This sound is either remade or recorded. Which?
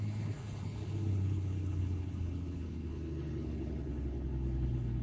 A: remade